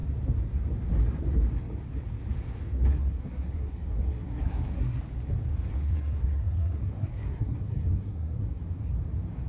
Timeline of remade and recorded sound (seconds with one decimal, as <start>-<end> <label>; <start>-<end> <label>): 0.0-2.9 recorded; 2.9-5.0 remade; 5.0-5.7 recorded; 5.7-8.6 remade; 8.6-9.5 recorded

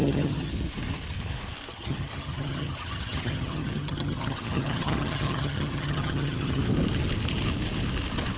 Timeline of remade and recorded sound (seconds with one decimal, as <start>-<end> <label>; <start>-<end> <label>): 0.0-0.5 remade; 0.5-1.7 recorded; 1.7-6.6 remade; 6.6-8.4 recorded

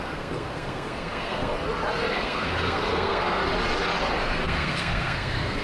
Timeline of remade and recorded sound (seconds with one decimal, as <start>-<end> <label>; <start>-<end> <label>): 0.0-1.5 remade; 1.5-2.1 recorded; 2.1-3.4 remade; 3.4-4.2 recorded; 4.2-5.6 remade

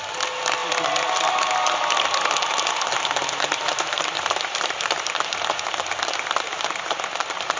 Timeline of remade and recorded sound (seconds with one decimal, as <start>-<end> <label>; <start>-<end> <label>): 0.0-2.9 recorded; 2.9-7.6 remade

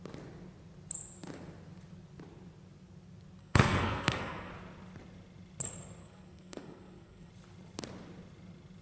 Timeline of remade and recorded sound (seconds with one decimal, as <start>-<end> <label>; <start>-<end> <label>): 0.0-3.4 recorded; 3.4-4.5 remade; 4.5-6.0 recorded; 6.0-7.3 remade; 7.3-8.8 recorded

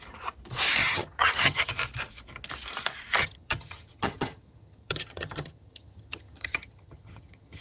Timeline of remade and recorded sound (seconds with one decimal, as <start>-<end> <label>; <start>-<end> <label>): 0.0-0.8 recorded; 0.8-1.7 remade; 1.7-3.2 recorded; 3.2-7.6 remade

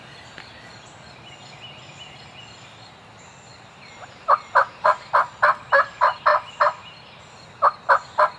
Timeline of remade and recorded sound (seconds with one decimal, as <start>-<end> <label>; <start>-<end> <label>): 0.0-3.5 recorded; 3.5-5.1 remade; 5.1-6.3 recorded; 6.3-7.2 remade; 7.2-8.4 recorded

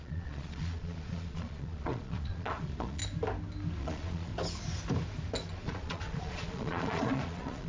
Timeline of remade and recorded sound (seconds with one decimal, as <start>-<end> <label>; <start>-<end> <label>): 0.0-3.0 remade; 3.0-3.8 recorded; 3.8-4.3 remade; 4.3-5.5 recorded; 5.5-7.7 remade